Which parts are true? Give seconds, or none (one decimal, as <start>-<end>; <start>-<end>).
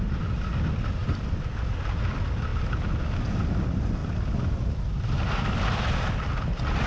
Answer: 0.0-1.0; 1.9-4.0